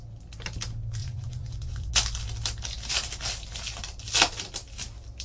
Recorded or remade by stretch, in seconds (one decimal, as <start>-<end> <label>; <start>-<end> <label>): 0.0-1.0 recorded; 1.0-1.9 remade; 1.9-5.2 recorded